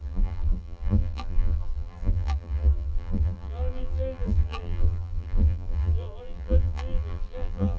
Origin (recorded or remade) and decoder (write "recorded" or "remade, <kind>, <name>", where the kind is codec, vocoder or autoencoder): remade, vocoder, BigVGAN v2